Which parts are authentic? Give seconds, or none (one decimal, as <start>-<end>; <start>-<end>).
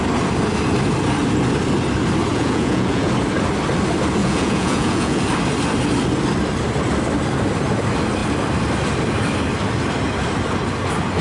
0.0-2.3; 3.1-4.2; 5.2-11.2